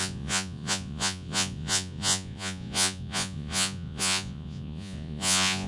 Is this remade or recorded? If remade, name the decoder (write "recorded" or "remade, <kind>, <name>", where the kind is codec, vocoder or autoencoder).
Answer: remade, vocoder, Vocos